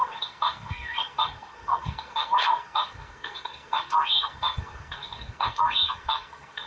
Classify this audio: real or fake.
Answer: fake